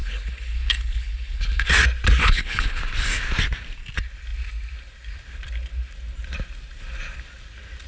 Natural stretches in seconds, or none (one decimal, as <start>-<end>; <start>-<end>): 1.7-2.2; 2.8-7.9